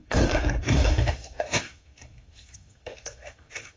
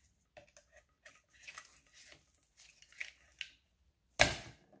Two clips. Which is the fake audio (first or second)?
first